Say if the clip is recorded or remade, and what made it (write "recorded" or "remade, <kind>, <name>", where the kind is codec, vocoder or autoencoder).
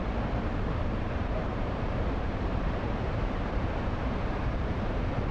remade, vocoder, BigVGAN v2